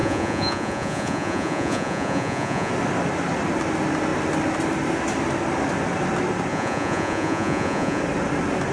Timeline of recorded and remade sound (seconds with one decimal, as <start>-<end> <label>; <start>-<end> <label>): 0.0-2.7 remade; 2.7-6.5 recorded; 6.5-8.0 remade; 8.0-8.7 recorded